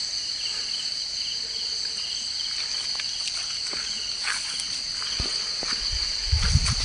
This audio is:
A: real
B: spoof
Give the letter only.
A